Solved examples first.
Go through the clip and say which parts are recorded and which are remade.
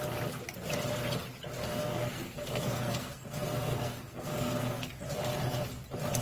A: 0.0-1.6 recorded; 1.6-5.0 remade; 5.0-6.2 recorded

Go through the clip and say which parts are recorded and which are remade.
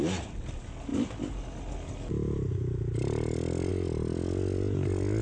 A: 0.0-5.2 recorded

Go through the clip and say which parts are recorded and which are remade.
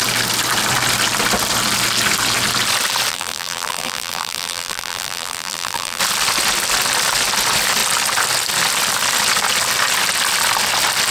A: 0.0-3.1 recorded; 3.1-6.0 remade; 6.0-11.1 recorded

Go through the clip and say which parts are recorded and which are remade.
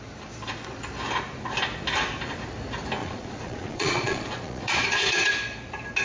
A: 0.0-3.0 recorded; 3.0-5.3 remade; 5.3-6.0 recorded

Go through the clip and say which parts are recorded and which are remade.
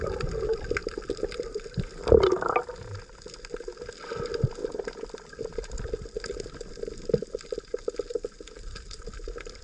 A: 0.0-9.6 recorded